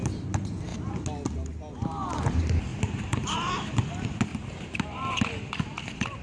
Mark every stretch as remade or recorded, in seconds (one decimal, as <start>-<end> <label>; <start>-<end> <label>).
0.0-2.7 recorded; 2.7-3.5 remade; 3.5-4.3 recorded; 4.3-5.6 remade; 5.6-6.2 recorded